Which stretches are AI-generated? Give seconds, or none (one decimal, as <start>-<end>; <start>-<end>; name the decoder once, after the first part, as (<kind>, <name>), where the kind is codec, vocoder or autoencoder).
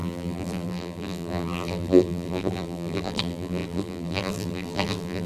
0.0-5.3 (vocoder, BigVGAN v2)